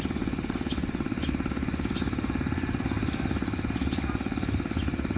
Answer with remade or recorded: recorded